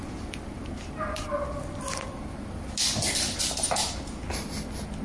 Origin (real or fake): real